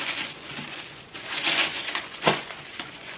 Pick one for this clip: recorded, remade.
remade